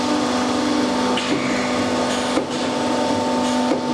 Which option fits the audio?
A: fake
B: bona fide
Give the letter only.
B